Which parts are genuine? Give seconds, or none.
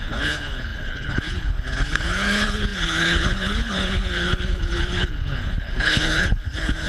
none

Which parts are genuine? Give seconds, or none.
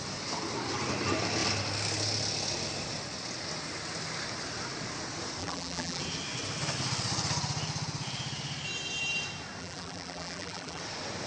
0.0-5.4; 6.0-9.6; 10.8-11.3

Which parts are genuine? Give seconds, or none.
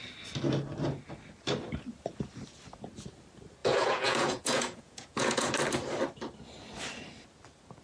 0.0-3.6; 5.5-7.8